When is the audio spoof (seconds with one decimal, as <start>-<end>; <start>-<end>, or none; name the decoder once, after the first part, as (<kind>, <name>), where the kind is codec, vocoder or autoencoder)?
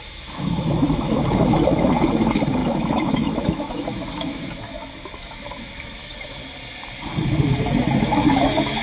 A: 0.0-6.4 (autoencoder, DAC-VAE); 7.5-8.8